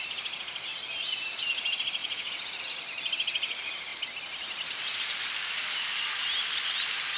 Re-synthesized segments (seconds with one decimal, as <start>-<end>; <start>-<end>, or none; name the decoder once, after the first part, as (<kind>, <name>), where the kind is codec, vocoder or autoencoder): 2.0-2.6 (vocoder, Vocos)